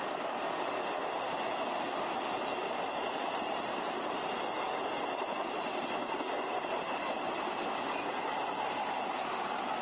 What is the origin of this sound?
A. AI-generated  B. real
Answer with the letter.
B